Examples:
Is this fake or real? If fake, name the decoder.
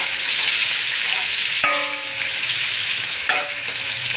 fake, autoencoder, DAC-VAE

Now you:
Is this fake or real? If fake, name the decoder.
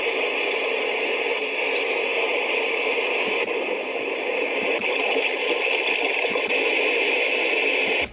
real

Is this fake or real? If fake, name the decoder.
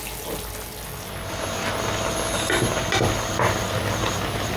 real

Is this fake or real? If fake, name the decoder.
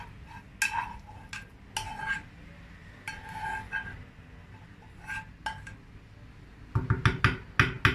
real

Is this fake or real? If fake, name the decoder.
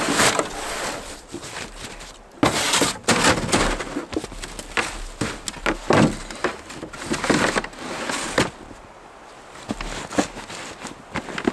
real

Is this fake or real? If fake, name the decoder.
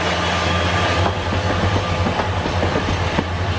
real